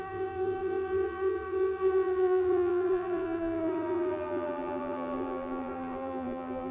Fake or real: fake